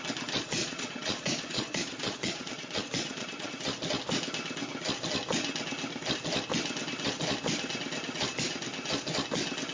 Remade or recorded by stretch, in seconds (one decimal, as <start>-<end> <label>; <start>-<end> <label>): 0.0-0.6 recorded; 0.6-3.5 remade; 3.5-9.7 recorded